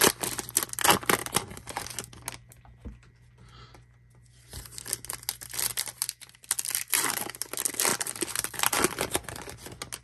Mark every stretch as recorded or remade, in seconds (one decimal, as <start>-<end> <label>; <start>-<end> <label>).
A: 0.0-1.2 recorded; 1.2-1.7 remade; 1.7-5.7 recorded; 5.7-7.3 remade; 7.3-7.9 recorded; 7.9-8.5 remade; 8.5-10.0 recorded